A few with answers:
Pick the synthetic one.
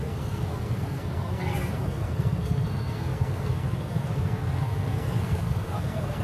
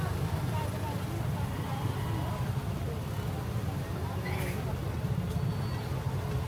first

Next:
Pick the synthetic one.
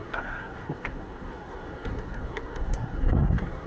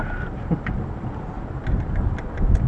first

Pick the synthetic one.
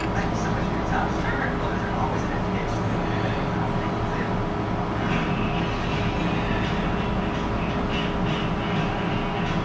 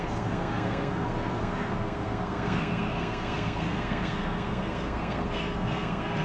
second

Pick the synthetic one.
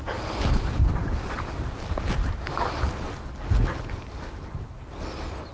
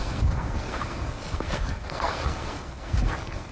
second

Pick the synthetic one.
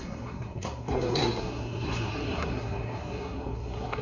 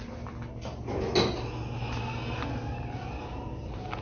first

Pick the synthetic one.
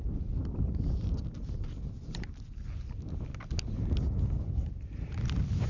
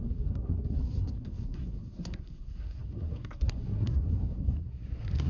second